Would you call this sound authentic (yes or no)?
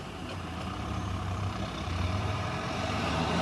no